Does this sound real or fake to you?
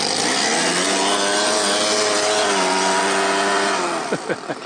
real